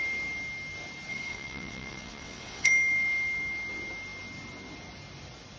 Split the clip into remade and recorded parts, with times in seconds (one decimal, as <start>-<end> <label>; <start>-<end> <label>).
0.0-1.1 recorded; 1.1-2.7 remade; 2.7-5.6 recorded